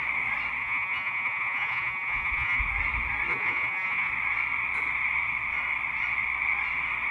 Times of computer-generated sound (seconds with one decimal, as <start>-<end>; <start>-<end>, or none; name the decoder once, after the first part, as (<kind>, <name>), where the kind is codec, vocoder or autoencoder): 0.6-2.6 (vocoder, Vocos); 3.3-4.1

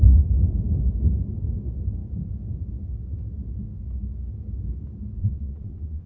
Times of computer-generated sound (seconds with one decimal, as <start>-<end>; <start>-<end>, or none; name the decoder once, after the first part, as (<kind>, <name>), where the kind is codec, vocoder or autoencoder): 5.2-6.1 (vocoder, WaveNeXt)

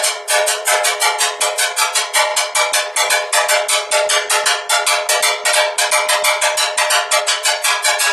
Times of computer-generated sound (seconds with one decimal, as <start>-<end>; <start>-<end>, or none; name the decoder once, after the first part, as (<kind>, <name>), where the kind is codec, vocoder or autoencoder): 0.0-2.3 (vocoder, BigVGAN v2); 7.2-8.1